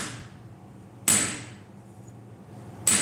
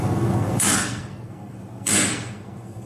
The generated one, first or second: second